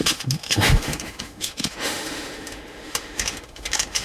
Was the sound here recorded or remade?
remade